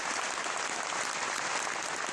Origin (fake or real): real